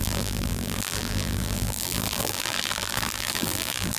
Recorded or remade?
remade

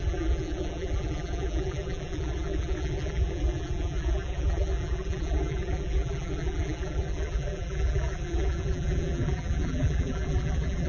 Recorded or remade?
remade